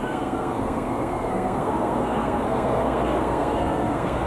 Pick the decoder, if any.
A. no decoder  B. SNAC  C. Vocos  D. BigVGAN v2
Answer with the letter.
B